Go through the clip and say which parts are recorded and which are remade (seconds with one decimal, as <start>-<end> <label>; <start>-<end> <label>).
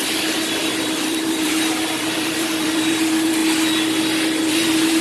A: 0.0-3.4 remade; 3.4-4.5 recorded; 4.5-5.0 remade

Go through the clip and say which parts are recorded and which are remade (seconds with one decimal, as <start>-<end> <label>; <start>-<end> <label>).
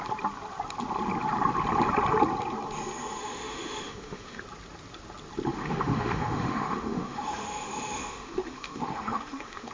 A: 0.0-3.2 recorded; 3.2-4.4 remade; 4.4-5.5 recorded; 5.5-9.7 remade